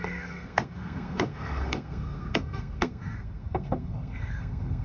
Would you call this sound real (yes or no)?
no